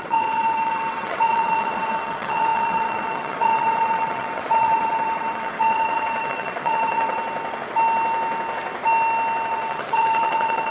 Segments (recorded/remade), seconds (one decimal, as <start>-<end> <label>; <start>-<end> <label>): 0.0-7.2 remade; 7.2-9.5 recorded; 9.5-10.7 remade